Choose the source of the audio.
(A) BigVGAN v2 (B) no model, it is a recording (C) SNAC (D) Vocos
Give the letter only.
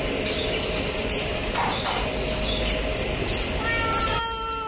B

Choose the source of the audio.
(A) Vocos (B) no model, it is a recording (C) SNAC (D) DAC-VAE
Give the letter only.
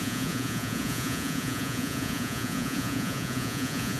A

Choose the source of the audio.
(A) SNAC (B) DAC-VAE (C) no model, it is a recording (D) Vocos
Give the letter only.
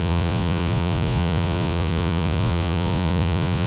D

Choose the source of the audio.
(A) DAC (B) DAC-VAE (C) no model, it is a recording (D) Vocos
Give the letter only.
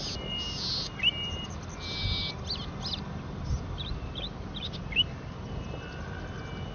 C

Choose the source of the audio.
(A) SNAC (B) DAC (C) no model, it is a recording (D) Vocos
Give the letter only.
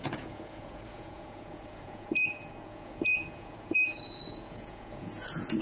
D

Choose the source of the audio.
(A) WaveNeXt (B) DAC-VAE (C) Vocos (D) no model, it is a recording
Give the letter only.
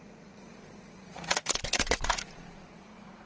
C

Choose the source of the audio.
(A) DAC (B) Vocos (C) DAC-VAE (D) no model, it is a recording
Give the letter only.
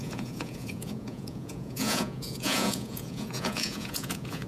B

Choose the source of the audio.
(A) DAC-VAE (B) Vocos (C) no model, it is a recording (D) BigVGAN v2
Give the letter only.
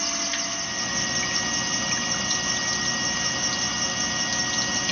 C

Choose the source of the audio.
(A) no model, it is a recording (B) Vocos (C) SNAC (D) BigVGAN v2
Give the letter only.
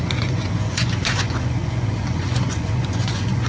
B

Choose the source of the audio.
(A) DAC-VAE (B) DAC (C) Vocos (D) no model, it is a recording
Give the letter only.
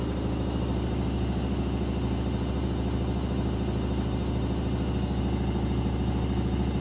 D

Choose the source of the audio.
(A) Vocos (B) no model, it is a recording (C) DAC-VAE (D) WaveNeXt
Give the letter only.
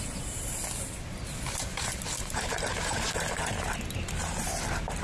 B